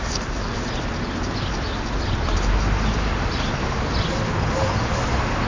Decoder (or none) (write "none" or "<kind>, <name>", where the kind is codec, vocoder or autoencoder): none